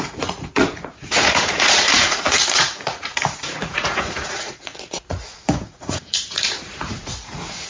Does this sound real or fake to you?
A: fake